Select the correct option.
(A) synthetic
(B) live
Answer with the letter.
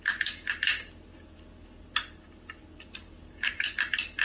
B